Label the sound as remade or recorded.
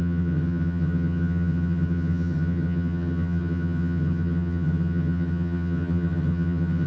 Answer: remade